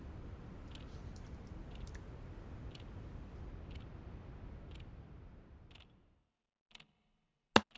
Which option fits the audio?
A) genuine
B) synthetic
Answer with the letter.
A